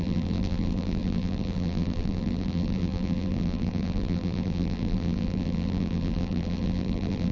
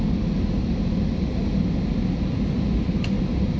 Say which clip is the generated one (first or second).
first